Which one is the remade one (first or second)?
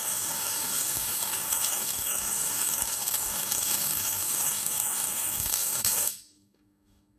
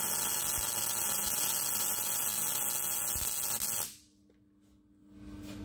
first